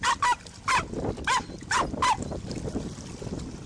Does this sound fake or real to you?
real